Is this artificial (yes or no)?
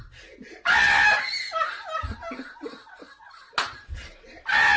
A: no